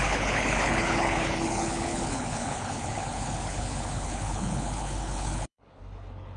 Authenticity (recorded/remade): remade